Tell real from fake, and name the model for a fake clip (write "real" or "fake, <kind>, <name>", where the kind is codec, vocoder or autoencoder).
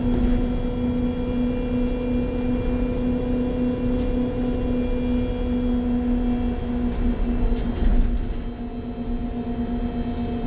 real